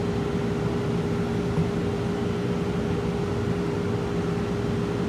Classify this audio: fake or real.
real